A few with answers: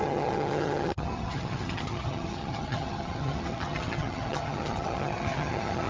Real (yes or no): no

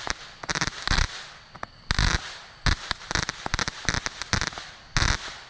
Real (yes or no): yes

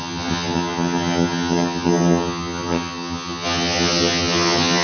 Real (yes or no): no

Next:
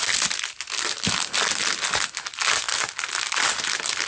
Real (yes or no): yes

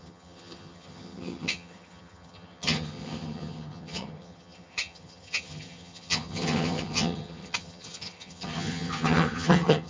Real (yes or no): no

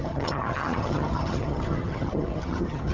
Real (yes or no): no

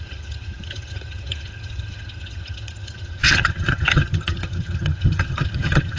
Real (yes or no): no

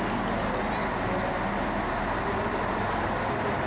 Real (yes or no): yes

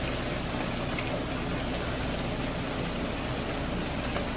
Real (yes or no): yes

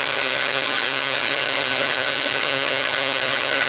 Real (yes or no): no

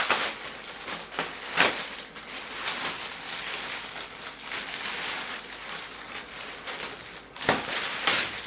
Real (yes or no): yes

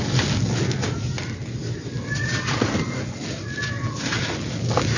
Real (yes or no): yes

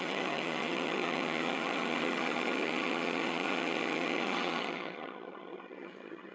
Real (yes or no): no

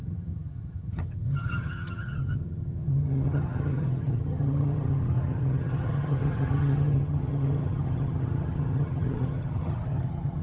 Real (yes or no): no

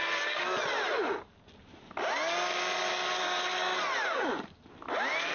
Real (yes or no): yes